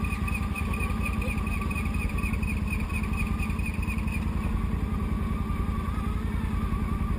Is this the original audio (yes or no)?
yes